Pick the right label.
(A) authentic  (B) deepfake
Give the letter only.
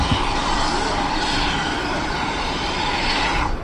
B